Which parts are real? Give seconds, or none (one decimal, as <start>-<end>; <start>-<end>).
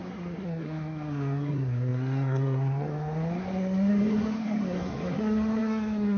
none